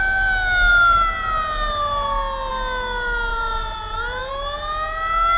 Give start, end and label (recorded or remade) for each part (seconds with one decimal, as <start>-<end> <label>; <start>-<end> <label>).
0.0-3.3 recorded; 3.3-4.3 remade; 4.3-5.4 recorded